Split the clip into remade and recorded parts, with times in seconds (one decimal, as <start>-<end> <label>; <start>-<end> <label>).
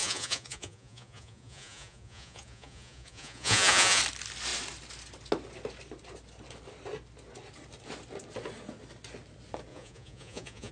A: 0.0-4.0 remade; 4.0-9.7 recorded; 9.7-10.7 remade